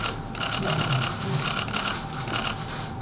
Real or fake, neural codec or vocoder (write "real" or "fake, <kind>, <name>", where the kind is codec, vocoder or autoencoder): real